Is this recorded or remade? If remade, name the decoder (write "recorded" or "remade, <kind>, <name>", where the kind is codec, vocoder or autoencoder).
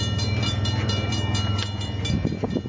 recorded